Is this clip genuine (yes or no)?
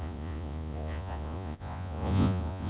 no